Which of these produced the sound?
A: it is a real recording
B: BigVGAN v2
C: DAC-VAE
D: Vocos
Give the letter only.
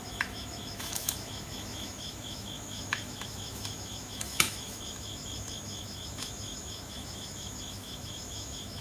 C